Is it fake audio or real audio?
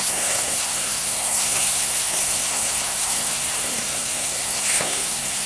fake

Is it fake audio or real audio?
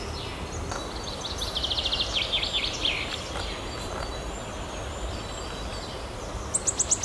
real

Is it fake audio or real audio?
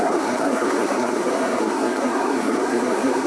fake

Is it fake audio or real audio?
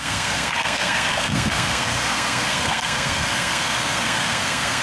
fake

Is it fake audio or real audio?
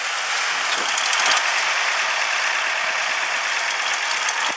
real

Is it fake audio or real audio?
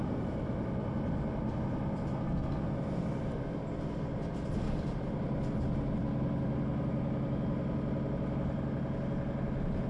real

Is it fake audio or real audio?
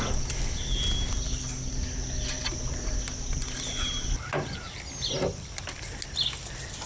real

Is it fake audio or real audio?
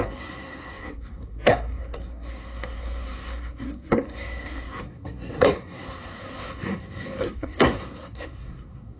fake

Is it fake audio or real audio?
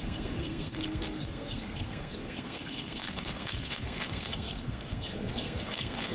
fake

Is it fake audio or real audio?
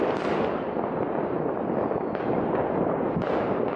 real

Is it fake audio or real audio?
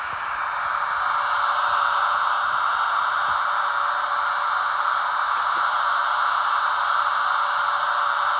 real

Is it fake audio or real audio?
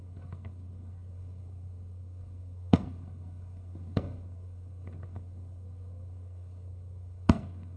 fake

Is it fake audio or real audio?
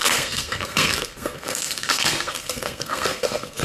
fake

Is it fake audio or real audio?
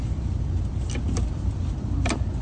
real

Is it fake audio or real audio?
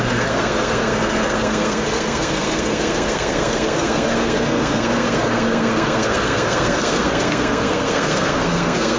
fake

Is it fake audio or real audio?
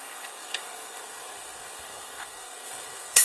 fake